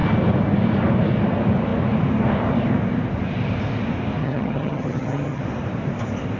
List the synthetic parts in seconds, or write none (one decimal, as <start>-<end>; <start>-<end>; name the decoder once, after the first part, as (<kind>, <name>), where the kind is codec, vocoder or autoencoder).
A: 4.2-5.4 (vocoder, HiFi-GAN)